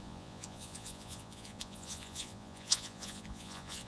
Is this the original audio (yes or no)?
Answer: no